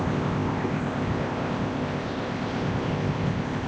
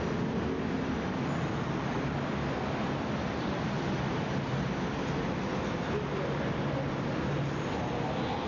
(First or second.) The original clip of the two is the second